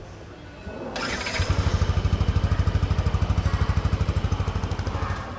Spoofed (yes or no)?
no